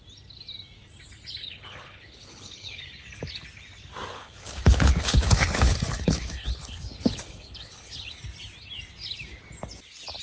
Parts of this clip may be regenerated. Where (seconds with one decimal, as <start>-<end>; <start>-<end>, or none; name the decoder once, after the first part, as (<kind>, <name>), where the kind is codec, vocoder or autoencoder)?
1.4-2.8 (codec, HILCodec); 4.1-8.2